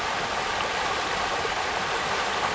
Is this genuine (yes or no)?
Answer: no